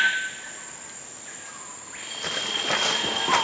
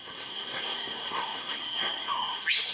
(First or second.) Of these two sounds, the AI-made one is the second